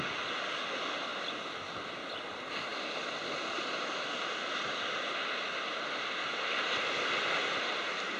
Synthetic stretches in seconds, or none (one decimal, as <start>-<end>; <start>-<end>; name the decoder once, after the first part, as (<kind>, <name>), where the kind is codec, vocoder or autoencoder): none